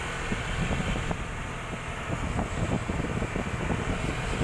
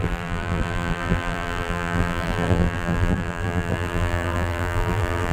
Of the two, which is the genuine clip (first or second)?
first